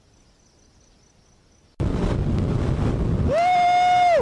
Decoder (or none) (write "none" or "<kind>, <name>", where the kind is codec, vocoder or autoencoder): none